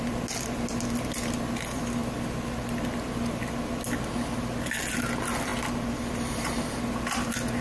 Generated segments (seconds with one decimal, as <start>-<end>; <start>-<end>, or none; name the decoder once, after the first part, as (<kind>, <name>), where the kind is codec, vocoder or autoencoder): none